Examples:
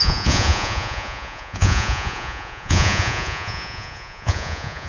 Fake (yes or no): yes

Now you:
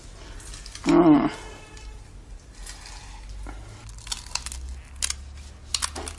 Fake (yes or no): no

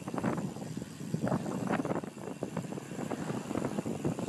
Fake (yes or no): yes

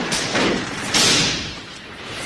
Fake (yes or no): no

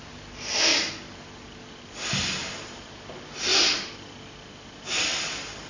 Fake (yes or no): no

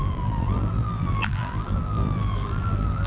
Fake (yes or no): yes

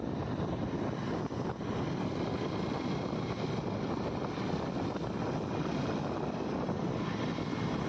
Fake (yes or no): no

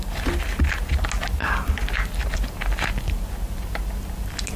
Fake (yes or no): no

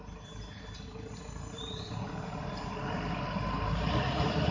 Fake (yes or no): no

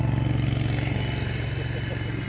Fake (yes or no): no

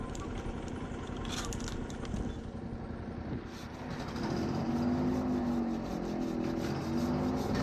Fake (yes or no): no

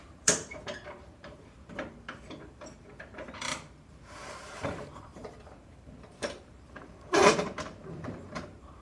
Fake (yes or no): yes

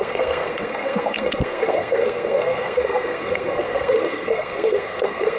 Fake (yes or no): yes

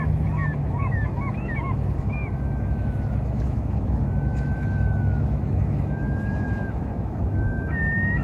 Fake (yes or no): yes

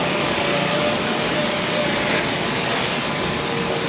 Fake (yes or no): yes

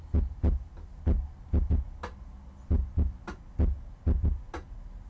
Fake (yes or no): no